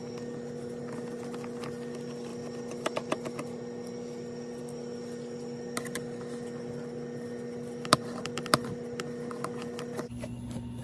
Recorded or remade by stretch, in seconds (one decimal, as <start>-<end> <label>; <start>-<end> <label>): 0.0-10.8 recorded